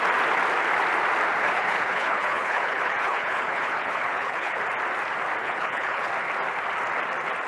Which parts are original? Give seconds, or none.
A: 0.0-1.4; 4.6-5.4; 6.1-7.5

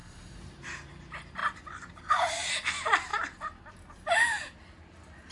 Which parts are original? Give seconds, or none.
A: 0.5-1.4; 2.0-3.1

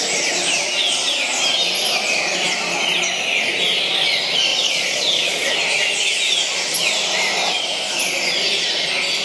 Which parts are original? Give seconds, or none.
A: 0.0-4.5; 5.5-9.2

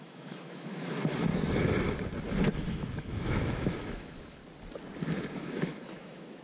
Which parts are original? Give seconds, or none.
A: 1.3-2.7; 4.4-5.3